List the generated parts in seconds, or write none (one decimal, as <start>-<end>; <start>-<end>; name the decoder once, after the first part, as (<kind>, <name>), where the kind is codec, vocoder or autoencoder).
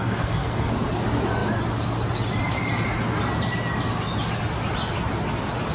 0.0-0.7 (codec, SNAC)